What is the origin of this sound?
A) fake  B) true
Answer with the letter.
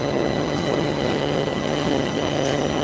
A